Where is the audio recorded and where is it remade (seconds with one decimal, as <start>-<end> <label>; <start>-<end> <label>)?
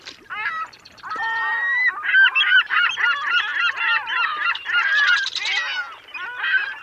0.0-3.5 remade; 3.5-4.5 recorded; 4.5-6.8 remade